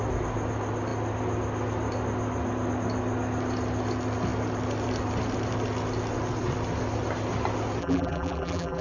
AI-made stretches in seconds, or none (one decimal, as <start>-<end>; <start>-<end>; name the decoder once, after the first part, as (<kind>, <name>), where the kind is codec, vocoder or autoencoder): 7.8-8.8 (vocoder, BigVGAN v2)